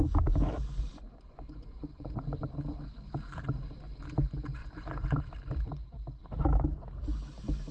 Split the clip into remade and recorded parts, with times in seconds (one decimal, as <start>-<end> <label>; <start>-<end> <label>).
0.0-0.9 recorded; 0.9-2.4 remade; 2.4-4.6 recorded; 4.6-5.2 remade; 5.2-7.7 recorded